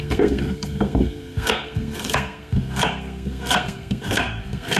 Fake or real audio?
fake